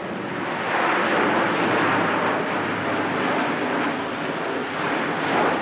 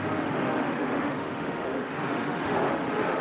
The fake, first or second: second